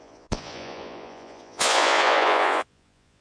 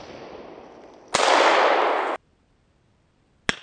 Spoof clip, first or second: first